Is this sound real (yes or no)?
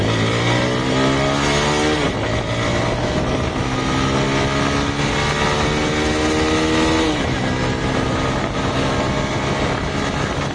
yes